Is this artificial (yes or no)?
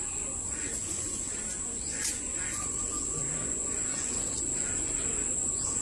yes